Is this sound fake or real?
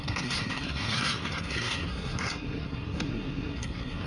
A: fake